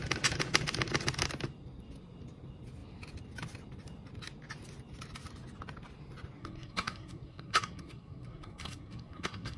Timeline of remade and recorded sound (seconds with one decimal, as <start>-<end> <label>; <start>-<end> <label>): 0.0-6.4 recorded; 6.4-9.6 remade